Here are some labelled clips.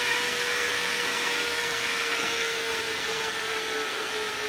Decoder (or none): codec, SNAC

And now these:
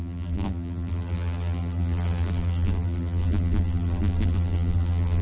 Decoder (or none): vocoder, BigVGAN v2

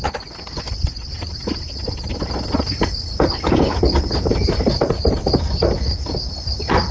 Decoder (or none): none